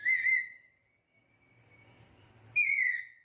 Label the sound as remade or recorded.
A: recorded